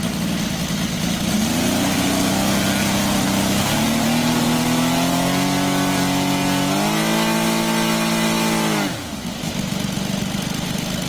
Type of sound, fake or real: real